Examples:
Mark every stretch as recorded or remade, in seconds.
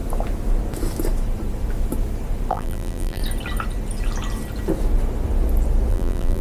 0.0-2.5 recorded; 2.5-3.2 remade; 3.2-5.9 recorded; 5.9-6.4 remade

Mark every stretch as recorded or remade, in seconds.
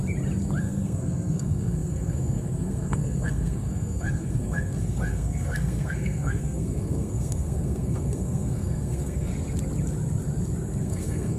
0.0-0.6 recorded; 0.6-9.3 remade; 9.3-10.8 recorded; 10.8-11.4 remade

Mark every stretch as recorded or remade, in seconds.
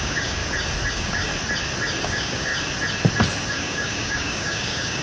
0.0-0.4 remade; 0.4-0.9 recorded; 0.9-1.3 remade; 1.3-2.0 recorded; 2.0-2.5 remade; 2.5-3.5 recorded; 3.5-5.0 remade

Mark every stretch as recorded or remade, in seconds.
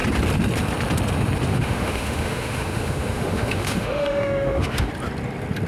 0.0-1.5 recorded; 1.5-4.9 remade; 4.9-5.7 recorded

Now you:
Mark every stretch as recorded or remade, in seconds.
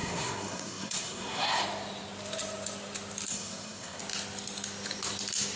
0.0-1.6 remade; 1.6-3.3 recorded; 3.3-4.0 remade; 4.0-5.6 recorded